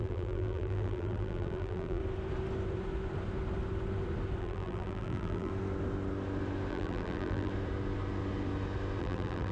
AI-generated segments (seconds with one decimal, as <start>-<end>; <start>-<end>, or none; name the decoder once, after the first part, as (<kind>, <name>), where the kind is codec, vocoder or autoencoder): 0.0-2.0 (vocoder, BigVGAN v2); 4.4-5.5; 6.7-7.5; 9.0-9.5